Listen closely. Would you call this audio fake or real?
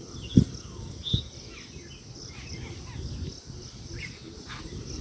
real